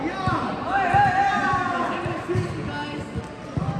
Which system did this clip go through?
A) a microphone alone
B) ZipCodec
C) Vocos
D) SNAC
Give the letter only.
A